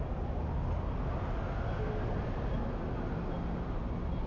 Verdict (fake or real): real